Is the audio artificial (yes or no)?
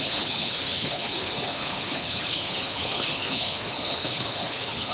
yes